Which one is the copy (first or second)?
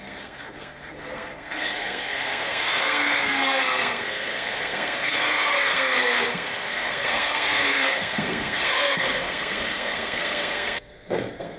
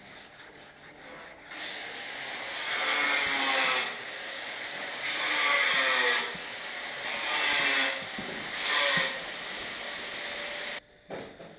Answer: first